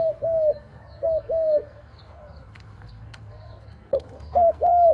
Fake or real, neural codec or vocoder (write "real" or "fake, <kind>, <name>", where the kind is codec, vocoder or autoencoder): fake, codec, SNAC